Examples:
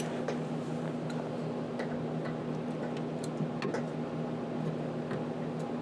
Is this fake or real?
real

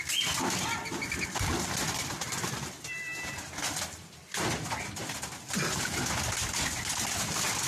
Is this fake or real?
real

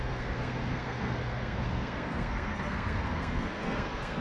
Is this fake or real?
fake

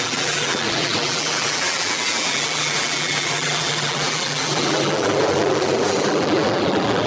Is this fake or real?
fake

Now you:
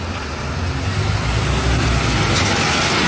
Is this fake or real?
real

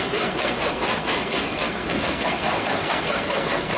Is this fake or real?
fake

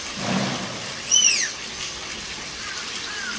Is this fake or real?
fake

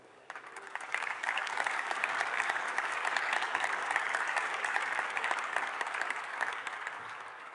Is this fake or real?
fake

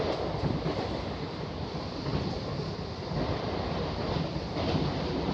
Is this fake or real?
real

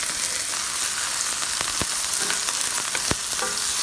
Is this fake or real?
real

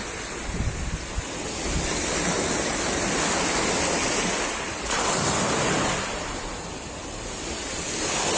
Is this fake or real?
real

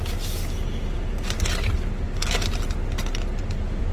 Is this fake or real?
real